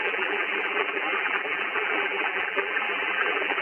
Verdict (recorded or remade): remade